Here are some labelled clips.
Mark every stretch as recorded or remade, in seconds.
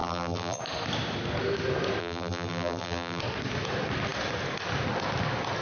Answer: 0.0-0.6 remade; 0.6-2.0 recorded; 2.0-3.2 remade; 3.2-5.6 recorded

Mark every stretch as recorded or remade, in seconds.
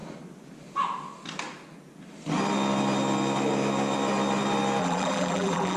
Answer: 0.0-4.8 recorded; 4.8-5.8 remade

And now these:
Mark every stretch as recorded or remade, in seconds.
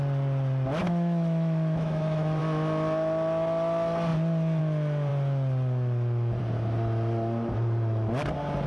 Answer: 0.0-0.8 recorded; 0.8-2.4 remade; 2.4-8.7 recorded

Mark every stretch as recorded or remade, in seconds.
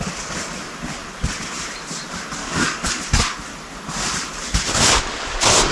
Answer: 0.0-2.4 recorded; 2.4-3.0 remade; 3.0-5.7 recorded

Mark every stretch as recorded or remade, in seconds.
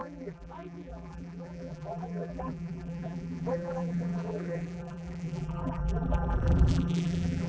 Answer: 0.0-7.5 remade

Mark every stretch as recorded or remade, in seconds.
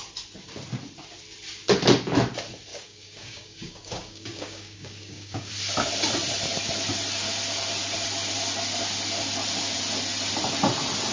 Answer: 0.0-2.7 recorded; 2.7-5.5 remade; 5.5-11.1 recorded